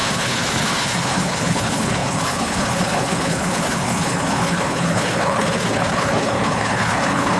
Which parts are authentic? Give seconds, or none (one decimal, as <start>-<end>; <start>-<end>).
none